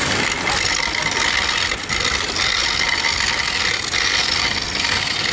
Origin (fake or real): real